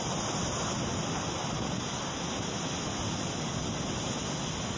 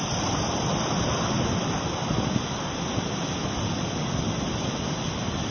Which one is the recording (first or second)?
first